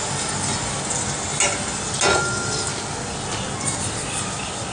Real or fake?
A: real